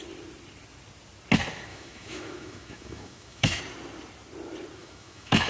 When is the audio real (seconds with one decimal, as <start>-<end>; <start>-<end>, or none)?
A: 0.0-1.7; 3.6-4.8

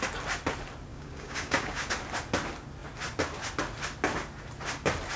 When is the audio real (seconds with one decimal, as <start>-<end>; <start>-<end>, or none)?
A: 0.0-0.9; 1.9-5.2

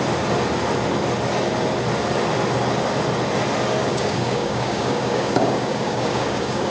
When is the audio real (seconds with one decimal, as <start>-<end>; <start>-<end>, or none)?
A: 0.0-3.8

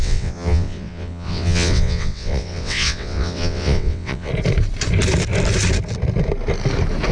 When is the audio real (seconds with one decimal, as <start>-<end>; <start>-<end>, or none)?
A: 4.3-7.1

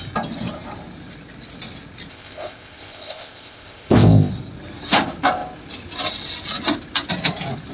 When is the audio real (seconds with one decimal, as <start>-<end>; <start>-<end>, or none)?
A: 0.0-2.1; 4.3-7.7

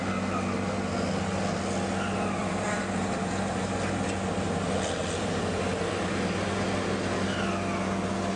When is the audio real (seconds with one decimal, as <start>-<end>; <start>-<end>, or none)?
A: 0.0-2.4; 3.6-8.4